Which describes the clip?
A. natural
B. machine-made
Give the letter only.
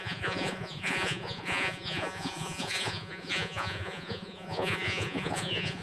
B